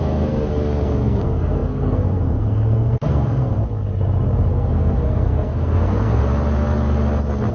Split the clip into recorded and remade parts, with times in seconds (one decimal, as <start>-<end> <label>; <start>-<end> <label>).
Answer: 0.0-3.6 remade; 3.6-4.5 recorded; 4.5-6.2 remade; 6.2-7.5 recorded